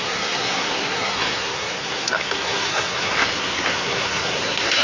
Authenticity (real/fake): fake